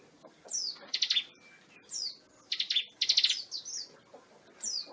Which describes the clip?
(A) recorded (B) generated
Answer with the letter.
A